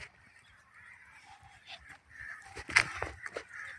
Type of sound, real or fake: real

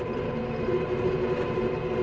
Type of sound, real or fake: real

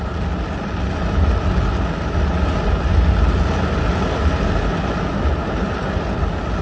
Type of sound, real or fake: real